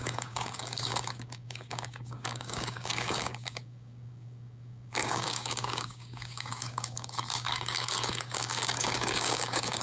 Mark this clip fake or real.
fake